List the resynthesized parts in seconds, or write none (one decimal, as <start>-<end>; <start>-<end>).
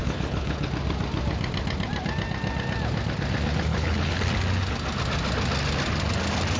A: 0.0-0.7; 3.7-4.2